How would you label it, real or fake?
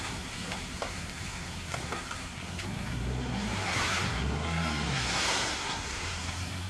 fake